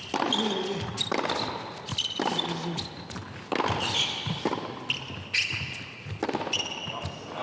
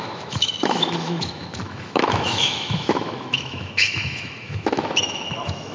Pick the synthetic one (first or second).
second